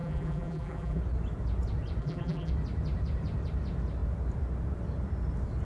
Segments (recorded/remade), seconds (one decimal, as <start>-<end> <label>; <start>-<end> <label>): 0.0-1.0 remade; 1.0-2.0 recorded; 2.0-2.5 remade; 2.5-5.6 recorded

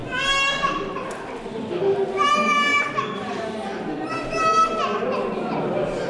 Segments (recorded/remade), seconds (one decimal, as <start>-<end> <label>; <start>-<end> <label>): 0.0-2.7 recorded; 2.7-5.4 remade; 5.4-6.1 recorded

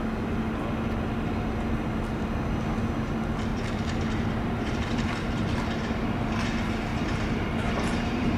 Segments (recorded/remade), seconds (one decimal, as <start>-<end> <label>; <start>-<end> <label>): 0.0-3.5 recorded; 3.5-5.6 remade; 5.6-6.9 recorded; 6.9-8.4 remade

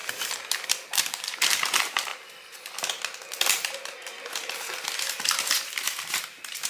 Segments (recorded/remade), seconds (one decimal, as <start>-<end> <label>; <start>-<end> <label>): 0.0-1.0 recorded; 1.0-2.1 remade; 2.1-6.1 recorded; 6.1-6.7 remade

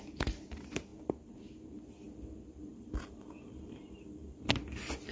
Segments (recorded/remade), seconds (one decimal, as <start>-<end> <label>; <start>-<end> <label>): 0.0-2.7 recorded; 2.7-4.5 remade; 4.5-5.1 recorded

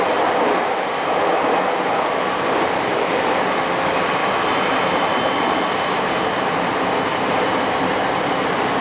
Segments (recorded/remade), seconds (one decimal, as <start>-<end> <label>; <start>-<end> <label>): 0.0-4.2 recorded; 4.2-6.4 remade; 6.4-8.8 recorded

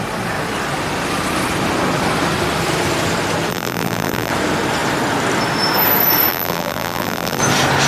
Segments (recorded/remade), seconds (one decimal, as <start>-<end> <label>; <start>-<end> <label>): 0.0-3.5 recorded; 3.5-4.3 remade; 4.3-6.3 recorded; 6.3-7.4 remade; 7.4-7.9 recorded

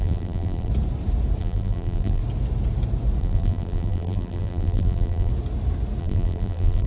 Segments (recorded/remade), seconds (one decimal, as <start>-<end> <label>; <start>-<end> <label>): 0.0-0.7 remade; 0.7-1.4 recorded; 1.4-2.2 remade; 2.2-3.2 recorded; 3.2-5.3 remade; 5.3-6.0 recorded; 6.0-6.9 remade